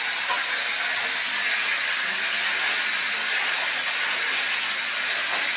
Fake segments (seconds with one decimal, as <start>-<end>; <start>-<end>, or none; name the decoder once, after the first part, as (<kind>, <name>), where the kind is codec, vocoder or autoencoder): none